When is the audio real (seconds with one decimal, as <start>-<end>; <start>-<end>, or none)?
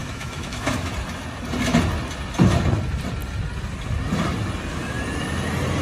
0.9-5.8